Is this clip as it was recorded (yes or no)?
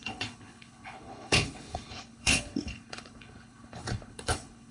no